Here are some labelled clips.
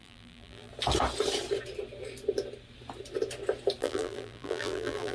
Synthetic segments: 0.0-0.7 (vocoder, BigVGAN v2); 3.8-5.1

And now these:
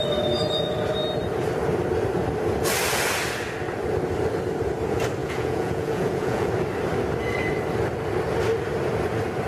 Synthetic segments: 5.2-6.5 (vocoder, Vocos)

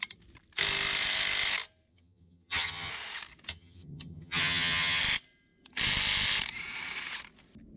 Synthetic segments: 1.9-2.9 (vocoder, HiFi-GAN); 3.5-5.0